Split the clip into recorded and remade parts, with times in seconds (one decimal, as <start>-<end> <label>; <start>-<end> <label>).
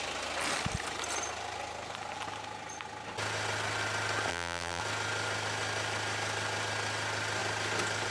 0.0-4.3 recorded; 4.3-4.8 remade; 4.8-8.1 recorded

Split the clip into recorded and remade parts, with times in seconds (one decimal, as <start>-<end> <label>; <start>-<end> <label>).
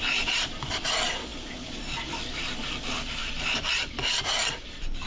0.0-5.1 recorded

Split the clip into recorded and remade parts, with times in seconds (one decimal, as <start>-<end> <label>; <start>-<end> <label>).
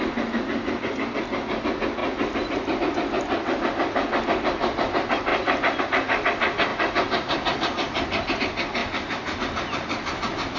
0.0-8.8 recorded; 8.8-9.4 remade; 9.4-10.6 recorded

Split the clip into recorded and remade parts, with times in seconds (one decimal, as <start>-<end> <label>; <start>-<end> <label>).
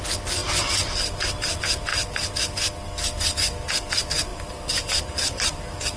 0.0-4.3 recorded; 4.3-5.5 remade; 5.5-6.0 recorded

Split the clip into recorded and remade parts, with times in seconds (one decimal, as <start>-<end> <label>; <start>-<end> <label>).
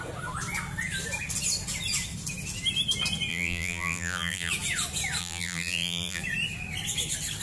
0.0-3.3 recorded; 3.3-4.5 remade; 4.5-5.2 recorded; 5.2-6.2 remade; 6.2-7.4 recorded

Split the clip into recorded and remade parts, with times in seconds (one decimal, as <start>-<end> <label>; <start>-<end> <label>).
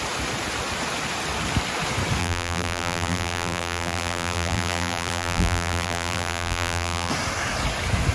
0.0-2.2 recorded; 2.2-7.1 remade; 7.1-8.1 recorded